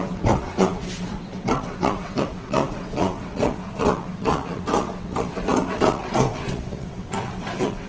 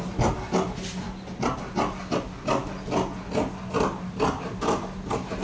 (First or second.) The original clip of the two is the second